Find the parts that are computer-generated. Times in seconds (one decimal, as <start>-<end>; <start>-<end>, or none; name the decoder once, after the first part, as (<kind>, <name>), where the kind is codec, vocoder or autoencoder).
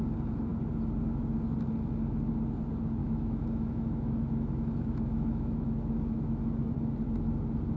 3.0-6.4 (autoencoder, DAC-VAE)